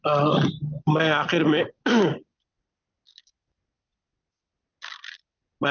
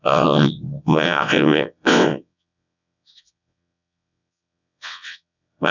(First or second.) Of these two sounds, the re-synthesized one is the second